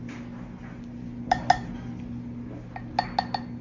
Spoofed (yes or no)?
no